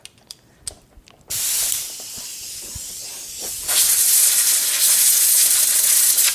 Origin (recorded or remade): recorded